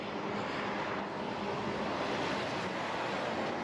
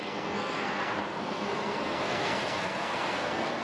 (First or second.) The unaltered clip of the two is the first